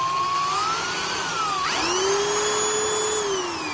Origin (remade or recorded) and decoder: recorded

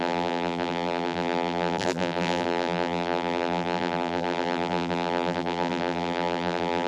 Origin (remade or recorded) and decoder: remade, vocoder, BigVGAN v2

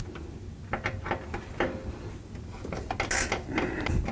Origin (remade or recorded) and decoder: recorded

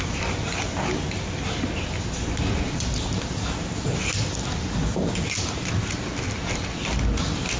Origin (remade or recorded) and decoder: recorded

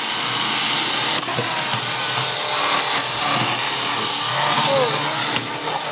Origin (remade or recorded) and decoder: recorded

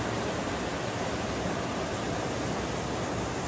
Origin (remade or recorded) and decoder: recorded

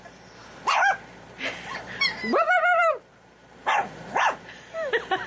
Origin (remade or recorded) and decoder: remade, vocoder, BigVGAN v2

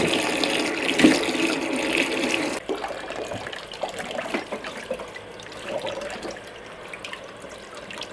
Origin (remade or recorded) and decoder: recorded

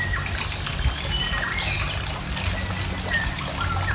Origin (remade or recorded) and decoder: recorded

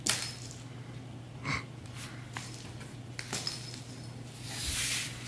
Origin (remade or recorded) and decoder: recorded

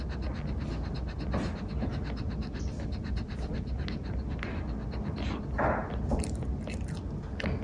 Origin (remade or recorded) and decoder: recorded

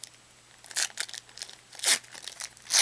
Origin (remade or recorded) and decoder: recorded